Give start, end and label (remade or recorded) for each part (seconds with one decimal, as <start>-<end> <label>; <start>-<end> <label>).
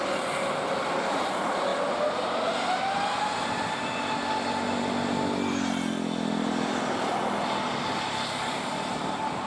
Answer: 0.0-9.5 recorded